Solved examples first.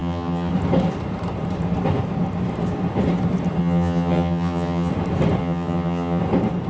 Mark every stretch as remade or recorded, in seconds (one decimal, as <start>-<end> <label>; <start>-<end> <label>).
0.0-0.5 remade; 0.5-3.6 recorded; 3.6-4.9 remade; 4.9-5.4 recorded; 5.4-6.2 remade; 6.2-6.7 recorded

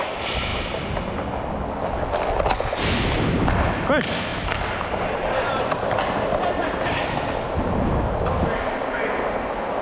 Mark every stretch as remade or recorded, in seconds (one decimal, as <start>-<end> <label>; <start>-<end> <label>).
0.0-9.8 recorded

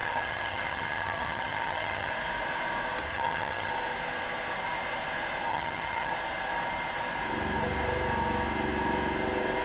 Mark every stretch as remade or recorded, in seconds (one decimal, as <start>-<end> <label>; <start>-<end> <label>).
0.0-2.1 remade; 2.1-3.1 recorded; 3.1-3.7 remade; 3.7-5.5 recorded; 5.5-6.1 remade; 6.1-9.6 recorded

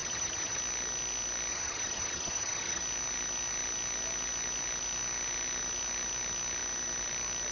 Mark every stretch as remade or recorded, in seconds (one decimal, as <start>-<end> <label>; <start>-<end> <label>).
0.0-0.6 remade; 0.6-1.5 recorded; 1.5-2.8 remade; 2.8-7.5 recorded